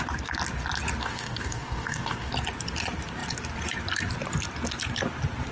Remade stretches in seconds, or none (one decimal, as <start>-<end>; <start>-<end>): 1.0-2.3